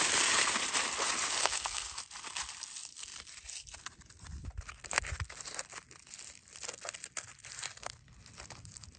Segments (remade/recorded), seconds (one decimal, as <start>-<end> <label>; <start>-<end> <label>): 0.0-1.4 recorded; 1.4-2.0 remade; 2.0-9.0 recorded